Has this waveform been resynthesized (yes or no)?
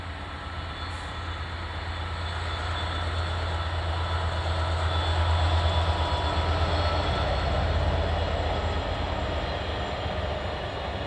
no